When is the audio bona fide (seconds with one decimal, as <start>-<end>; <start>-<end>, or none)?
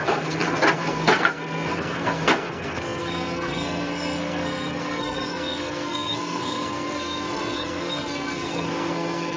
none